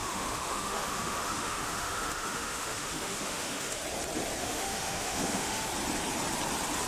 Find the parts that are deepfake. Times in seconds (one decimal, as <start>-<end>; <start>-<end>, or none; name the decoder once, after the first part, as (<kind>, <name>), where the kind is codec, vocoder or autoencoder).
0.0-3.8 (autoencoder, DAC-VAE); 4.4-5.7